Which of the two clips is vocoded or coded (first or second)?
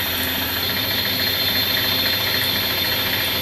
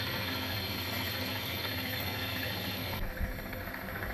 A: second